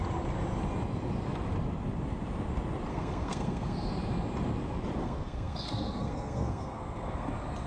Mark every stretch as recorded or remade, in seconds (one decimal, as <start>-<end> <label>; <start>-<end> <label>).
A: 0.0-2.9 recorded; 2.9-3.9 remade; 3.9-5.0 recorded; 5.0-7.3 remade; 7.3-7.7 recorded